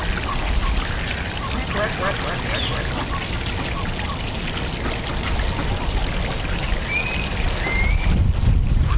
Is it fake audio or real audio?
real